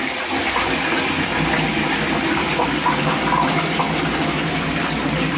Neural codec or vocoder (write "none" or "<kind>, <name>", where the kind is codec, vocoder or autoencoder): none